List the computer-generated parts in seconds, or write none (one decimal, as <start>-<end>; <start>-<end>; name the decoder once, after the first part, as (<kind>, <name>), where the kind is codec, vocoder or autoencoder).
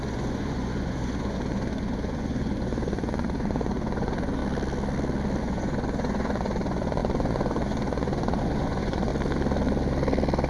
0.0-4.4 (vocoder, Vocos); 5.4-9.1